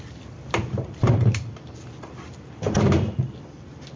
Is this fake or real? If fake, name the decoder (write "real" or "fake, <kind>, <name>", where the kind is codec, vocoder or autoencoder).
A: fake, vocoder, BigVGAN v2